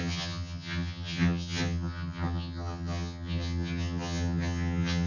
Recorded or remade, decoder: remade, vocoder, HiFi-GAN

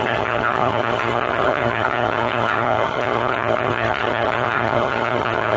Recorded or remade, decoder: remade, vocoder, HiFi-GAN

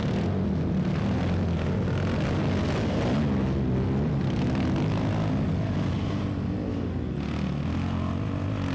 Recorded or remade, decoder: recorded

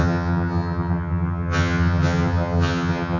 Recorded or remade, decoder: remade, vocoder, HiFi-GAN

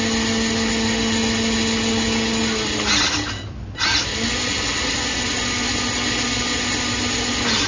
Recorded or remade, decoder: recorded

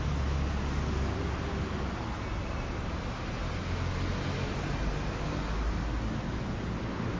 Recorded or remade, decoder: recorded